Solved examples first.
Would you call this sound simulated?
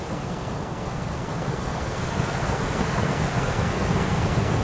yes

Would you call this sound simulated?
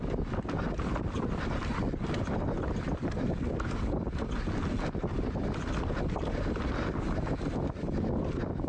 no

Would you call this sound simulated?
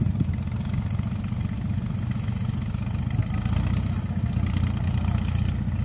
no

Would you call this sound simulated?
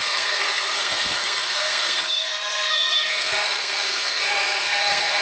yes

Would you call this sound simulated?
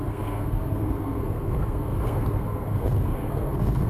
yes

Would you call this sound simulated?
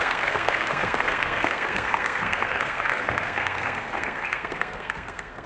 yes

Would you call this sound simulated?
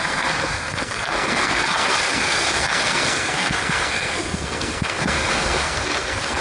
yes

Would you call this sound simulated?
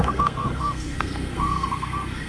yes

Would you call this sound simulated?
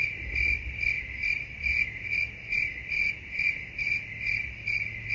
no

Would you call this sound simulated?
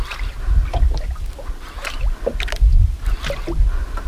no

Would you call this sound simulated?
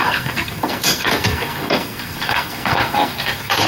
yes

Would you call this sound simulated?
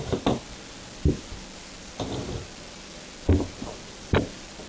no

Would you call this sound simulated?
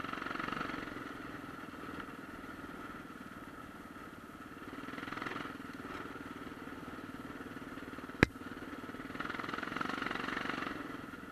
no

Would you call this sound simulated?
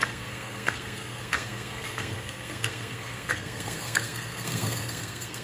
yes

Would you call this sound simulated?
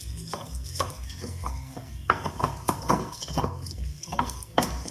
yes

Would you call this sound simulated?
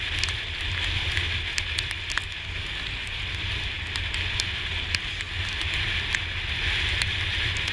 no